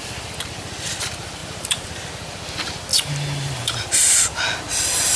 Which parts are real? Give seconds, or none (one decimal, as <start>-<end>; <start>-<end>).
0.0-1.4; 2.1-2.9; 4.2-5.2

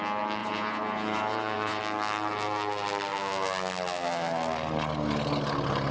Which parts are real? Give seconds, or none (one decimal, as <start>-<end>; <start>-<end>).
0.0-0.4; 1.8-5.9

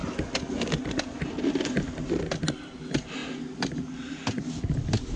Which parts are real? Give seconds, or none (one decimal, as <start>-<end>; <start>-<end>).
0.0-5.2